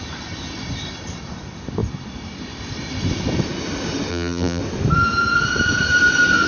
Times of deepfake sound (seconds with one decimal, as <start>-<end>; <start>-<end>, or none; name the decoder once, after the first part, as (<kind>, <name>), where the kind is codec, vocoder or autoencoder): 4.1-4.6 (vocoder, BigVGAN v2)